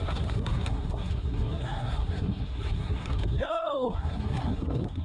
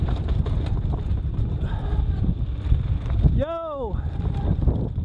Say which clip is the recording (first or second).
second